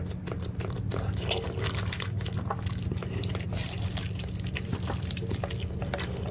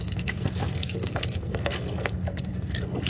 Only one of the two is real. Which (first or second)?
first